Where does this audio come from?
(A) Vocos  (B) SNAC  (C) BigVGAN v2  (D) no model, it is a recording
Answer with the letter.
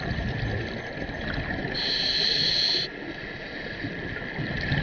D